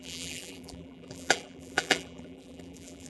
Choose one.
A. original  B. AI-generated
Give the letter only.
B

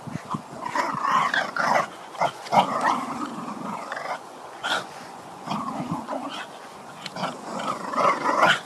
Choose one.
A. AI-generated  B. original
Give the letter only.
A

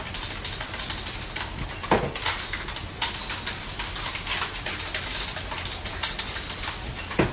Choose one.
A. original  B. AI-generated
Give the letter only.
A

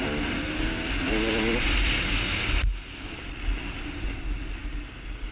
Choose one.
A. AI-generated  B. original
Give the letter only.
B